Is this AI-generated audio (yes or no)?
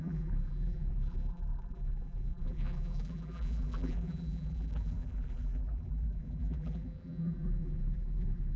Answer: yes